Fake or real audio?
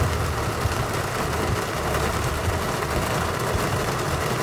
real